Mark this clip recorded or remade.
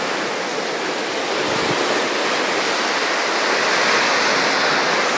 recorded